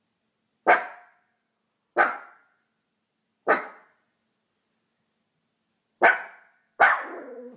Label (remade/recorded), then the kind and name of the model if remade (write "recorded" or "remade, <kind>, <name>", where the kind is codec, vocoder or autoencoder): recorded